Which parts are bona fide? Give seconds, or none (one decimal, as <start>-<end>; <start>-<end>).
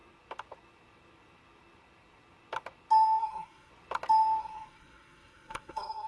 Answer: 0.0-3.2; 3.7-4.4